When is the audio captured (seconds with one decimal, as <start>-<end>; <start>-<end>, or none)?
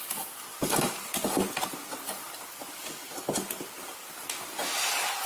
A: 0.0-5.3